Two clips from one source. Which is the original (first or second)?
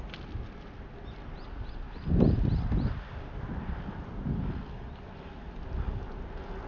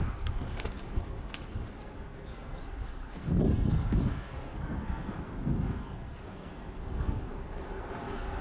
first